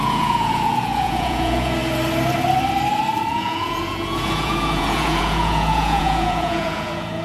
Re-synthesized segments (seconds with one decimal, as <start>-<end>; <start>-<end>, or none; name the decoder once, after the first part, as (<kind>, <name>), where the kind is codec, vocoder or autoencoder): 0.0-1.8 (vocoder, Vocos); 3.3-7.2